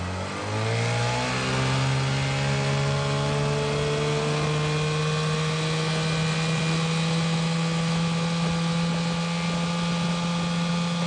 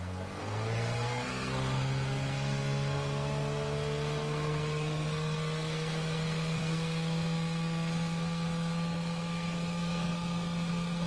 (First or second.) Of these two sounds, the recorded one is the first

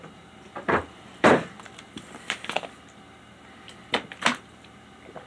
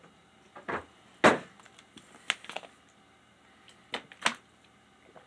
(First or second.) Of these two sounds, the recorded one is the second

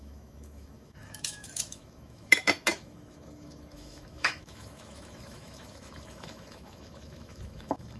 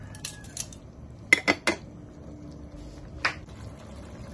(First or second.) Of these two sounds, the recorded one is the second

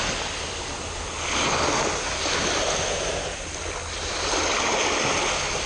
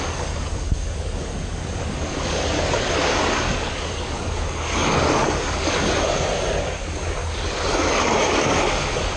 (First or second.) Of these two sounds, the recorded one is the first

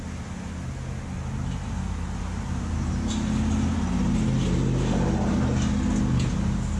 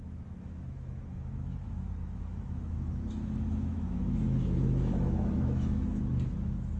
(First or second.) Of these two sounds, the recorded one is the first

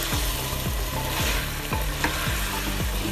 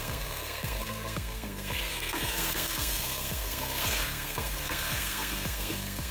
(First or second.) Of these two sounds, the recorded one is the first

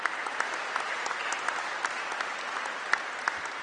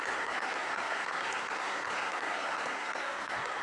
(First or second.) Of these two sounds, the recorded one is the first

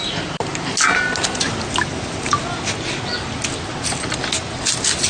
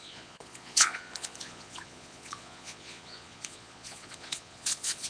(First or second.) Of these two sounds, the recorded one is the first